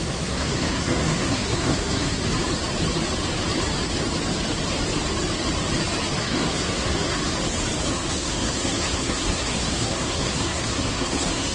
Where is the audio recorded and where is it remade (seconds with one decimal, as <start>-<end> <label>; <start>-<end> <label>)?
0.0-2.2 remade; 2.2-6.2 recorded; 6.2-7.2 remade; 7.2-7.9 recorded; 7.9-11.5 remade

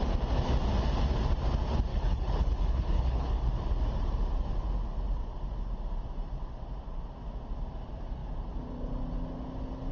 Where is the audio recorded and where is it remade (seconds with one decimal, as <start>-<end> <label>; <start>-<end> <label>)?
0.0-1.9 recorded; 1.9-3.4 remade; 3.4-9.9 recorded

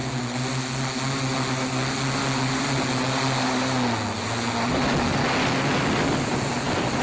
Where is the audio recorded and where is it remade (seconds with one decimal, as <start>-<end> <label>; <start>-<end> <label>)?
0.0-7.0 recorded

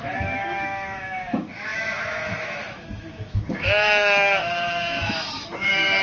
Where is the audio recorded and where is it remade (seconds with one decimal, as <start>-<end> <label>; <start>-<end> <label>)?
0.0-6.0 remade

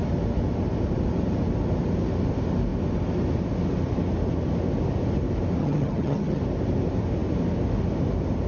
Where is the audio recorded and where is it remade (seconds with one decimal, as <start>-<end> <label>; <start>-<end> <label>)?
0.0-5.6 recorded; 5.6-6.4 remade; 6.4-8.5 recorded